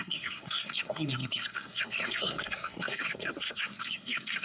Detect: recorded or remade remade